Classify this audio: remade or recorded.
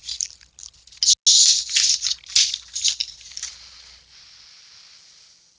recorded